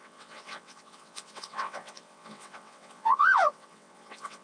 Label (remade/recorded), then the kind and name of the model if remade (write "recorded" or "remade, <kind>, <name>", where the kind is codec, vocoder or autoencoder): remade, vocoder, WaveNeXt